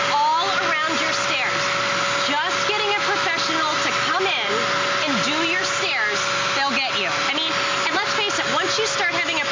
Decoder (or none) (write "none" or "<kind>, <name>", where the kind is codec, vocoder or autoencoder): none